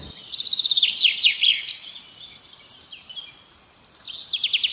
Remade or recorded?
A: recorded